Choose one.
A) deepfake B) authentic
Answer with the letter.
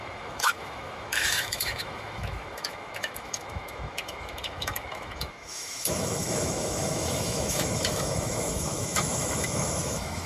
A